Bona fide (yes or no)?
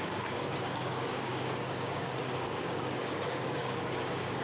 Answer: no